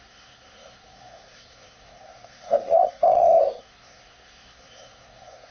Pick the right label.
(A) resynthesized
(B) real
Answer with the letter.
A